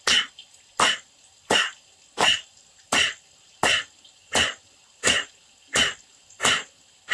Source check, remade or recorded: recorded